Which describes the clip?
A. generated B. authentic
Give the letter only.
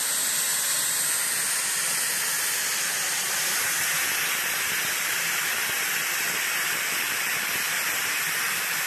B